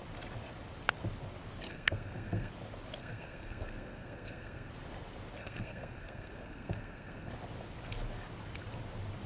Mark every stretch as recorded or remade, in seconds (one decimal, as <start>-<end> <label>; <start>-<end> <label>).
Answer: 0.0-1.7 recorded; 1.7-2.5 remade; 2.5-3.0 recorded; 3.0-4.7 remade; 4.7-5.4 recorded; 5.4-7.3 remade; 7.3-9.3 recorded